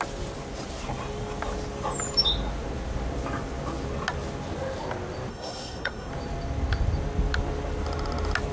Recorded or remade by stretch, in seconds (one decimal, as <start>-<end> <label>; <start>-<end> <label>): 0.0-5.3 recorded; 5.3-6.1 remade; 6.1-8.5 recorded